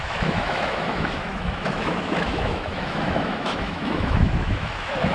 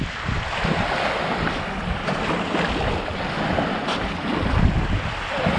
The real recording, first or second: second